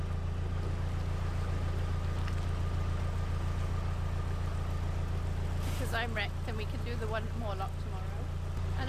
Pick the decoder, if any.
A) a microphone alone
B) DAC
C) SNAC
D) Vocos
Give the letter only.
A